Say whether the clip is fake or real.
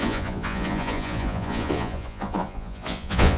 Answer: fake